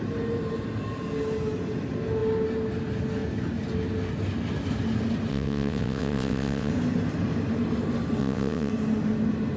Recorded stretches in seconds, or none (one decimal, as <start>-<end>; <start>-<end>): 0.0-5.3; 6.7-8.2; 8.7-9.6